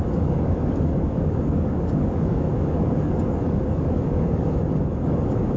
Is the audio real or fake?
fake